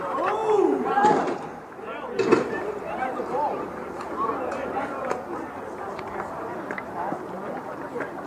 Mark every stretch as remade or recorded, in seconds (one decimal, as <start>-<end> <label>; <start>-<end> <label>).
0.0-4.6 remade; 4.6-7.3 recorded; 7.3-8.3 remade